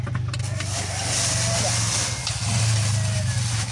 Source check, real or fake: real